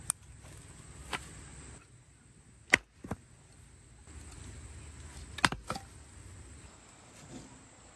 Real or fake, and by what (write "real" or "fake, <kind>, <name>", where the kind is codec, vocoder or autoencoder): real